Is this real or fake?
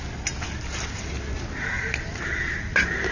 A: real